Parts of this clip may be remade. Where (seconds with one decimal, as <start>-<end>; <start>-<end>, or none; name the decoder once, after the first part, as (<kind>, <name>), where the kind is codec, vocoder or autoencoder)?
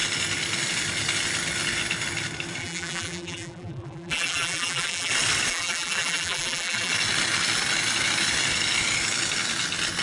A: 2.6-5.1 (vocoder, BigVGAN v2); 5.5-6.9